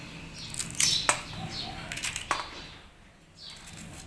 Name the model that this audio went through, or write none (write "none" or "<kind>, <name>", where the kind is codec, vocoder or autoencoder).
none